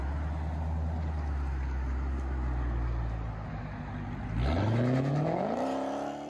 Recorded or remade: recorded